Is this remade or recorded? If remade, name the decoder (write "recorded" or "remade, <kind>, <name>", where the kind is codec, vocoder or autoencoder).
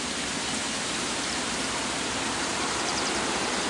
remade, vocoder, BigVGAN v2